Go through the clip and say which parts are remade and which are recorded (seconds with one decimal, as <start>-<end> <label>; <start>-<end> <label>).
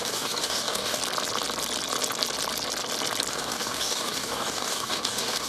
0.0-1.0 remade; 1.0-3.3 recorded; 3.3-5.5 remade